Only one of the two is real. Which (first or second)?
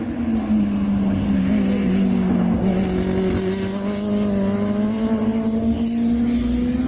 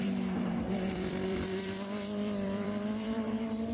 first